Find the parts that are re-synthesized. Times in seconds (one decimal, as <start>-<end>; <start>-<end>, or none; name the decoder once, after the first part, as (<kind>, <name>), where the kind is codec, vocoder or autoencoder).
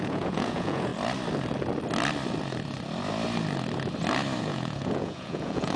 0.0-0.9 (vocoder, Vocos); 4.4-5.8